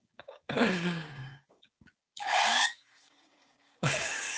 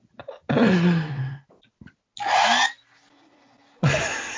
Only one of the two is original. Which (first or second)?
second